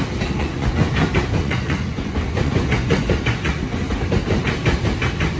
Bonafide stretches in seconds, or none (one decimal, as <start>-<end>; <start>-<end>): 0.0-0.4; 0.9-1.4; 3.8-5.4